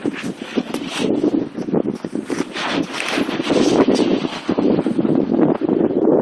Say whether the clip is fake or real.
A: real